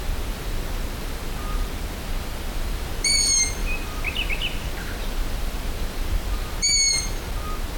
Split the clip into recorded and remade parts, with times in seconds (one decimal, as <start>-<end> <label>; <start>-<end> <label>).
0.0-7.8 recorded